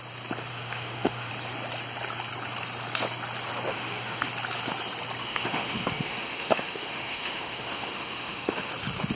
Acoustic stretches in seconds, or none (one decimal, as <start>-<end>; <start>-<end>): 0.0-0.5; 1.3-3.7; 4.3-5.2; 8.7-9.2